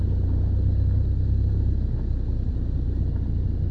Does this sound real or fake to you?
real